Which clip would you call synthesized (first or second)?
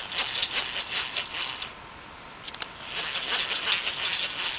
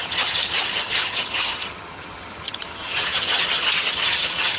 second